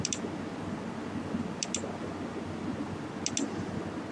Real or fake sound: real